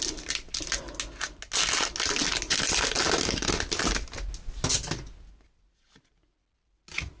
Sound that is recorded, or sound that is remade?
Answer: recorded